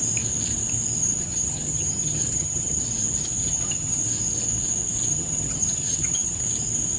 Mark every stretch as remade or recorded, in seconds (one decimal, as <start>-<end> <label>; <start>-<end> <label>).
0.0-1.0 recorded; 1.0-2.8 remade; 2.8-3.4 recorded; 3.4-4.0 remade; 4.0-5.1 recorded; 5.1-6.4 remade; 6.4-7.0 recorded